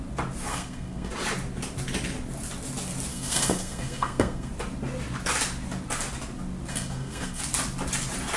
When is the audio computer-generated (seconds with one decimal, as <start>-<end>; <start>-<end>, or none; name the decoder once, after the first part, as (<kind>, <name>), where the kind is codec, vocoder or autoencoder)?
0.5-1.1 (codec, SNAC); 3.1-4.5; 6.7-7.4